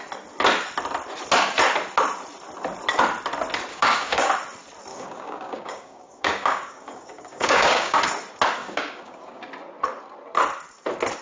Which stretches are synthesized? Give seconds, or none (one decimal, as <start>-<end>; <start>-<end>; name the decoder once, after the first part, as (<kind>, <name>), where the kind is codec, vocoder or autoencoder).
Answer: 3.7-4.3 (codec, DAC); 4.9-8.0; 8.6-9.5